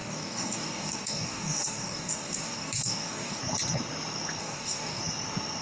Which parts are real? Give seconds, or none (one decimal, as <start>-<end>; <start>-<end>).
3.4-4.4; 5.0-5.6